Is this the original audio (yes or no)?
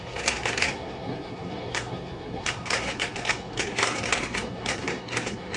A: no